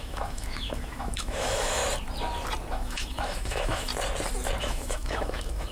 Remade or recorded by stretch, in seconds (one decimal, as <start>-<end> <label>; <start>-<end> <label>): 0.0-1.8 remade; 1.8-2.7 recorded; 2.7-3.9 remade; 3.9-4.6 recorded; 4.6-5.7 remade